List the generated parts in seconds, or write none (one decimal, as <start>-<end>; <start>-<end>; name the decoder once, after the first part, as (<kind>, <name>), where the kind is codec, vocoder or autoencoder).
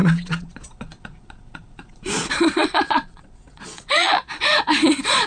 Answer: 0.0-5.3 (vocoder, Vocos)